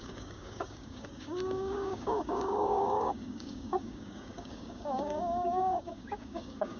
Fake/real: fake